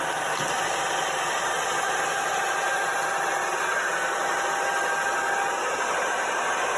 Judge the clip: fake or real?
real